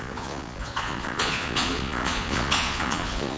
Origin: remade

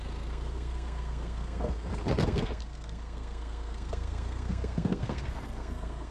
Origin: remade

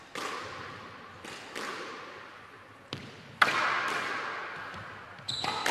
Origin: recorded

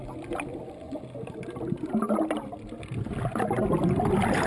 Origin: recorded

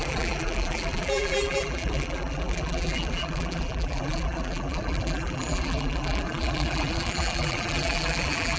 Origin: remade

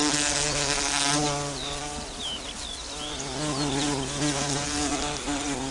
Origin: recorded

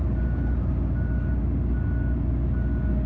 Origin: recorded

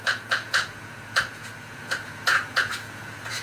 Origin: remade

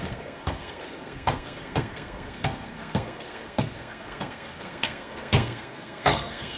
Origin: remade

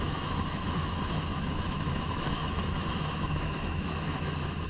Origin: remade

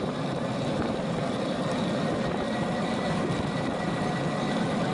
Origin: remade